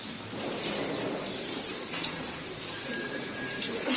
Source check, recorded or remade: remade